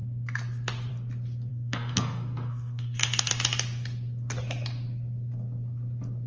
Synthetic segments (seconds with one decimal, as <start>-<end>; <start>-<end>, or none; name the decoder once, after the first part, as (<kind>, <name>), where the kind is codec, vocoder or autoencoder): 1.5-3.3 (codec, SNAC)

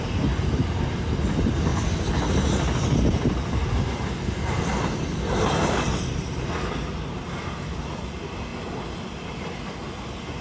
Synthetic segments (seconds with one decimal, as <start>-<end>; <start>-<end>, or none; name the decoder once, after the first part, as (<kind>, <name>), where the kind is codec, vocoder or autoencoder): none

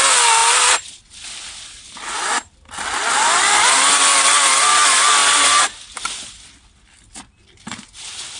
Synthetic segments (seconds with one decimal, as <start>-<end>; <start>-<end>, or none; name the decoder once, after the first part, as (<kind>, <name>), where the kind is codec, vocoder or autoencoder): none

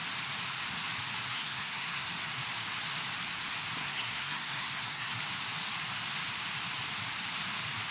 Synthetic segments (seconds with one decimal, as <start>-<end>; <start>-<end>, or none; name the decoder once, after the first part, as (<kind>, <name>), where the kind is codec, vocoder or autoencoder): 1.3-2.1 (codec, SNAC); 3.8-5.2

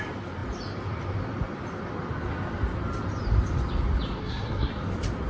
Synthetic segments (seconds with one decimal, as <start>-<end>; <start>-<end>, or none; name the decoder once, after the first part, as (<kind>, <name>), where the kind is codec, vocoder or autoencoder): 4.2-4.7 (codec, SNAC)

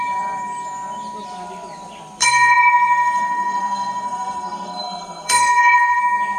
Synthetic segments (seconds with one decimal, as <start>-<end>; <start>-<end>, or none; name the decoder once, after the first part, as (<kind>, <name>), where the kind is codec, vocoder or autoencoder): 2.2-6.0 (codec, SNAC)

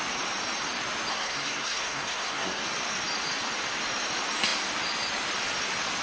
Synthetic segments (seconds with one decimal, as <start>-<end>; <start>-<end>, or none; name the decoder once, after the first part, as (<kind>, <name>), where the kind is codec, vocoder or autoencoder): 1.1-2.6 (codec, SNAC)

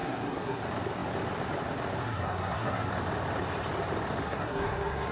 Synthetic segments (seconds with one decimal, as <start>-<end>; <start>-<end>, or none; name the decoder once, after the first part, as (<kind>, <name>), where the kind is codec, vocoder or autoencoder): 0.0-0.6 (codec, SNAC); 2.0-2.9; 4.2-5.1